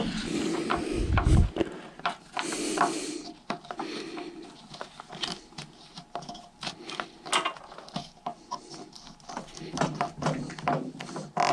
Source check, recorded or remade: recorded